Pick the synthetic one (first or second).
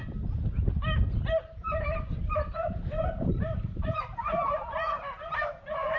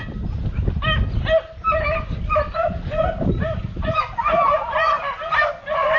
first